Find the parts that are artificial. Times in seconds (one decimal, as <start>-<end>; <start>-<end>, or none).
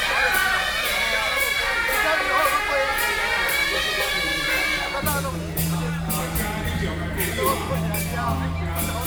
none